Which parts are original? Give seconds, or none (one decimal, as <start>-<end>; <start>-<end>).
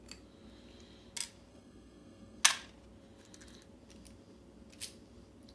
0.0-1.5; 2.4-5.5